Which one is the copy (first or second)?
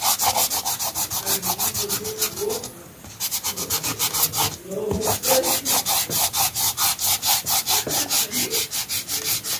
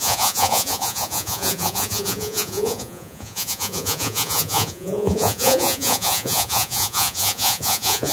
second